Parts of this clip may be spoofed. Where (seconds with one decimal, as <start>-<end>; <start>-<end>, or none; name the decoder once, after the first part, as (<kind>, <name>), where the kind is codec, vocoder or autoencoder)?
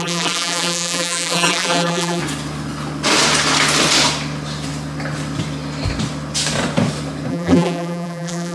0.0-2.2 (vocoder, BigVGAN v2); 7.3-8.5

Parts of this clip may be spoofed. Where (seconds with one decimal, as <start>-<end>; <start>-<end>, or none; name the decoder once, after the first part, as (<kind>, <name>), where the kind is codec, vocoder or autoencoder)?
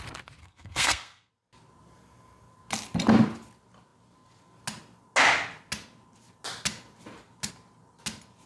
0.4-1.3 (codec, SNAC)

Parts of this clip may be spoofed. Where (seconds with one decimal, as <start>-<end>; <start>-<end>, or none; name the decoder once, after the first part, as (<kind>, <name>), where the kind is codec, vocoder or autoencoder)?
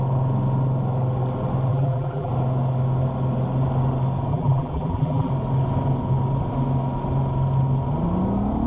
1.7-2.3 (vocoder, BigVGAN v2); 4.3-5.3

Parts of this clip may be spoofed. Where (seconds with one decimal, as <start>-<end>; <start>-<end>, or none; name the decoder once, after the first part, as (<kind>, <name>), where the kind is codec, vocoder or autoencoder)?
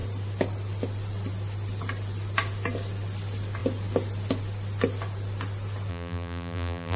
5.9-7.0 (vocoder, BigVGAN v2)